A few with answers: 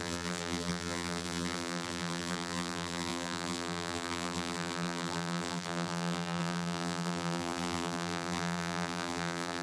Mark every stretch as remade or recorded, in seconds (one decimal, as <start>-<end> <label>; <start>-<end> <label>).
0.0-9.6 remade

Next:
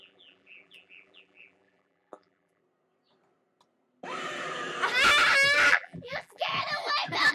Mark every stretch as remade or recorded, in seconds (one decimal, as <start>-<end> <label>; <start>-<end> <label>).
0.0-2.6 remade; 2.6-5.7 recorded; 5.7-6.5 remade; 6.5-7.3 recorded

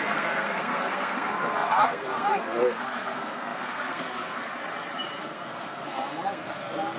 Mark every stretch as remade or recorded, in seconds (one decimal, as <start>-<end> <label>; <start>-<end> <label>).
0.0-4.5 remade; 4.5-5.2 recorded; 5.2-7.0 remade

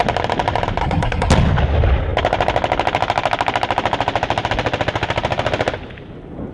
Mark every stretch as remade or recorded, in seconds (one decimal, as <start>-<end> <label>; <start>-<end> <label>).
0.0-0.8 recorded; 0.8-1.3 remade; 1.3-6.5 recorded